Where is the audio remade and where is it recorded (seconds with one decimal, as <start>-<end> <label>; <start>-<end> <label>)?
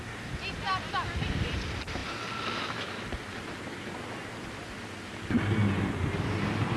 0.0-6.8 recorded